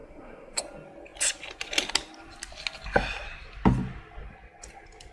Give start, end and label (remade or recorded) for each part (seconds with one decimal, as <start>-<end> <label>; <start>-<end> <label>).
0.0-0.6 remade; 0.6-5.1 recorded